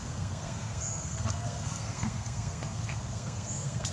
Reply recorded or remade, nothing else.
remade